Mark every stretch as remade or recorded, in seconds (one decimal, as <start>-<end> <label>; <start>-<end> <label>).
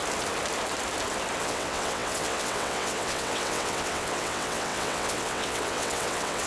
0.0-1.4 recorded; 1.4-6.5 remade